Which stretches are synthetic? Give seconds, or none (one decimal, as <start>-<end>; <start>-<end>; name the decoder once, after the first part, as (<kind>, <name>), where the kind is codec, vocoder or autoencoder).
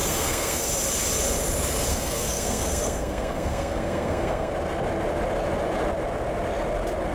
0.0-0.7 (codec, SNAC); 1.9-4.5